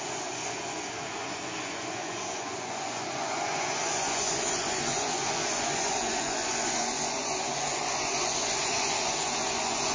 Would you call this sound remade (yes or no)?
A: yes